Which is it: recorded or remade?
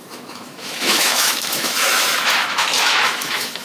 remade